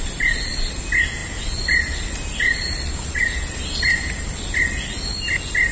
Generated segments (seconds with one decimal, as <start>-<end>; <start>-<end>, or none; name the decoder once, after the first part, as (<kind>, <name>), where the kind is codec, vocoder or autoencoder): none